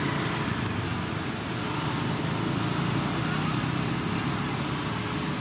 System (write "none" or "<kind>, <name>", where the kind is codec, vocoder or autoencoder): none